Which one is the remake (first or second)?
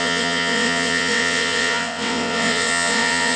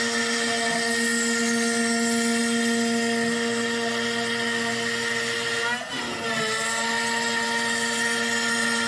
first